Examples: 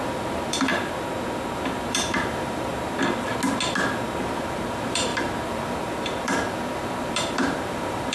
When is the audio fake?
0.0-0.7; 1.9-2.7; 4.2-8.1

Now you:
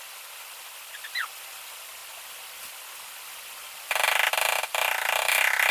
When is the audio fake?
0.0-5.7

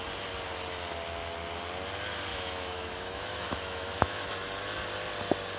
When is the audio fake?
2.3-4.3

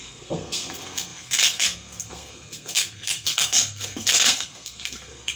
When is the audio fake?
0.0-5.4

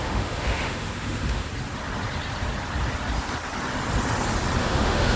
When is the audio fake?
0.0-1.5; 4.6-5.2

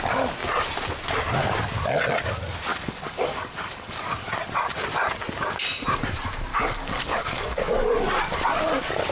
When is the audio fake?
2.7-4.1; 6.5-7.7

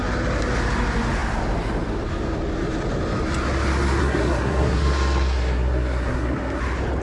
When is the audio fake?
4.0-6.6